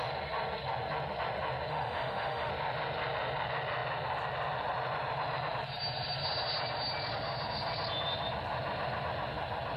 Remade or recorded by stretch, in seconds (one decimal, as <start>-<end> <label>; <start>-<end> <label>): 0.0-1.7 recorded; 1.7-2.5 remade; 2.5-9.8 recorded